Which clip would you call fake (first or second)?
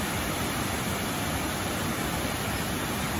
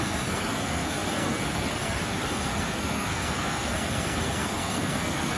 second